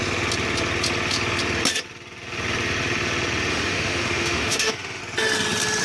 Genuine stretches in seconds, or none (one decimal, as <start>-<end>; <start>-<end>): 0.0-3.5; 5.0-5.8